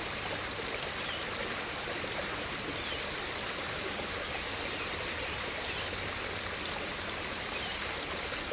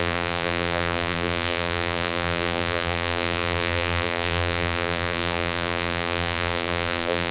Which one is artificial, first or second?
second